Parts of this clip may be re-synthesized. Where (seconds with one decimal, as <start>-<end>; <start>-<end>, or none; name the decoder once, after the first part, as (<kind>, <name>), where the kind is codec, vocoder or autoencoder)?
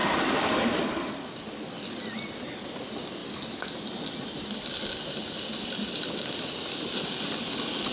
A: 0.0-2.6 (vocoder, BigVGAN v2)